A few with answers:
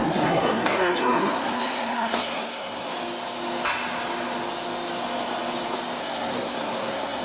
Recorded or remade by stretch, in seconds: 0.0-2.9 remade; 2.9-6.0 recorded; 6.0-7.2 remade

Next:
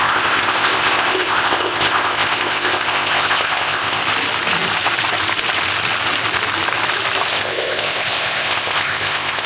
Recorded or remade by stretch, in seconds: 0.0-4.0 remade; 4.0-7.3 recorded; 7.3-9.5 remade

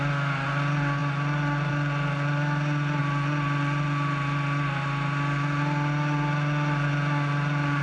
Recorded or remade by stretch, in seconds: 0.0-7.8 recorded

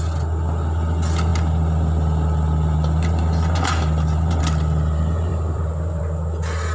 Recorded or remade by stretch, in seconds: 0.0-5.3 recorded; 5.3-6.0 remade; 6.0-6.7 recorded

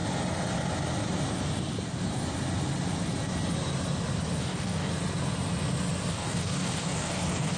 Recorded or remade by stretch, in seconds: 0.0-4.4 recorded; 4.4-4.9 remade; 4.9-6.1 recorded; 6.1-7.6 remade

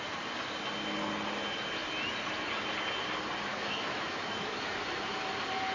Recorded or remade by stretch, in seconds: 0.0-3.5 recorded; 3.5-4.9 remade; 4.9-5.7 recorded

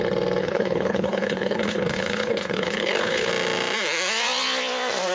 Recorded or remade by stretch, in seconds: 0.0-0.4 recorded; 0.4-3.3 remade; 3.3-5.1 recorded